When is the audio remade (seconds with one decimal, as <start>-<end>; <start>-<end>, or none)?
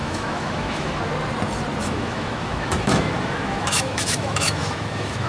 0.0-1.0; 1.8-5.3